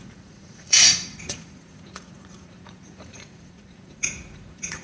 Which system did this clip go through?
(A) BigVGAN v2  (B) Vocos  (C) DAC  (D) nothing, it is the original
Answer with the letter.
B